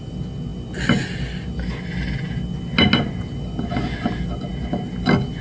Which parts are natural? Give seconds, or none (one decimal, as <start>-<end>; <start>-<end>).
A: 0.0-5.4